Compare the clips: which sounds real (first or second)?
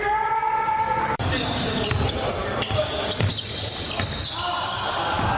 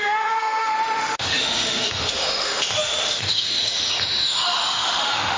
first